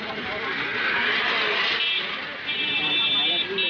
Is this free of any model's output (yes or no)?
yes